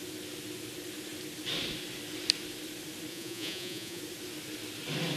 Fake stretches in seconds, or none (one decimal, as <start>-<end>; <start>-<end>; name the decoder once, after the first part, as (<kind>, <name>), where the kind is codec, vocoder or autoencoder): 3.1-4.0 (vocoder, Vocos)